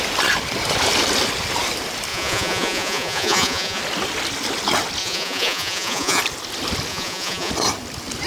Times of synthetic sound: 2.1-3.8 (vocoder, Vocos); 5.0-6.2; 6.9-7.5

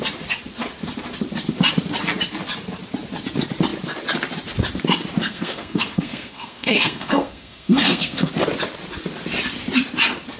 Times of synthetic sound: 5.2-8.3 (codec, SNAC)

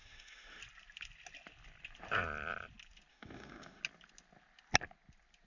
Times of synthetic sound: 0.0-0.6 (autoencoder, DAC-VAE); 3.1-3.8

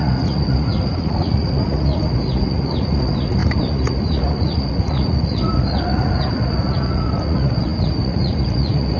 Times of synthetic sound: 0.0-9.0 (vocoder, Vocos)

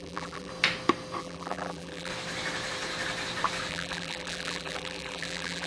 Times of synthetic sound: 0.0-0.5 (vocoder, BigVGAN v2); 1.2-2.1; 3.7-5.7

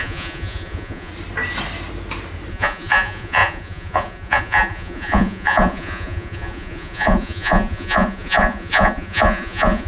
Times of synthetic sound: 0.0-1.1 (vocoder, Vocos); 2.5-9.9